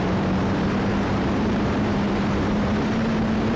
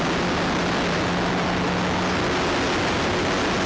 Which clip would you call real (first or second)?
second